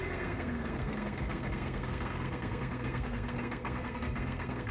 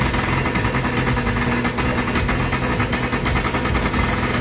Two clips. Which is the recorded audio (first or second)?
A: second